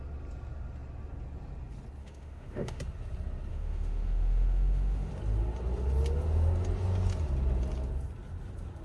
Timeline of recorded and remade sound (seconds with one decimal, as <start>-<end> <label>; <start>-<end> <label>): 0.0-2.0 recorded; 2.0-2.8 remade; 2.8-3.5 recorded; 3.5-5.1 remade; 5.1-8.8 recorded